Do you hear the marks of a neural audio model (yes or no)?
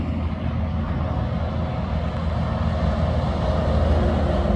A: no